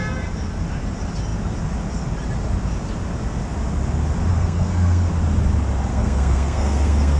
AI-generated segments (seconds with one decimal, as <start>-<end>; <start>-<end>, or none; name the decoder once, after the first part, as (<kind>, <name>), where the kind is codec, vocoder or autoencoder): 4.3-5.1 (codec, SNAC); 5.9-7.2